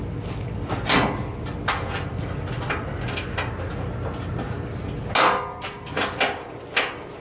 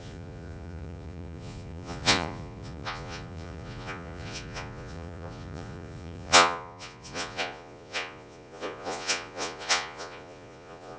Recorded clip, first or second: first